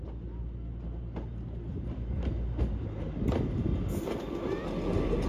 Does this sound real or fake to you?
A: real